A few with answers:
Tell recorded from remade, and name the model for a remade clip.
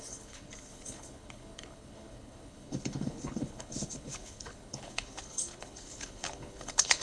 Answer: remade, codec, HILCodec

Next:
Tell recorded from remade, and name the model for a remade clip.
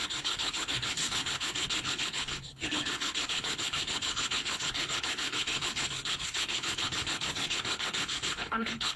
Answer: remade, codec, HILCodec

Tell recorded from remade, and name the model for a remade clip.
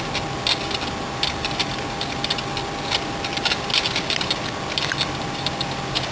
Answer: recorded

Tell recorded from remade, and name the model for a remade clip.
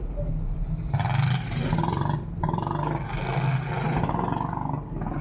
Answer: recorded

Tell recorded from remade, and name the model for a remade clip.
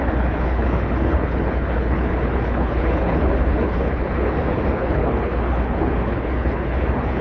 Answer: remade, codec, HILCodec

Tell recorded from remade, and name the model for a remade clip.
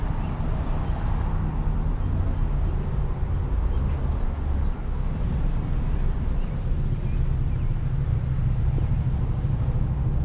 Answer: recorded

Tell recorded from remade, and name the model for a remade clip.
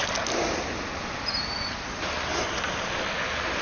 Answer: recorded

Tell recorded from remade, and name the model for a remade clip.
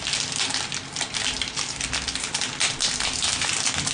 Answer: recorded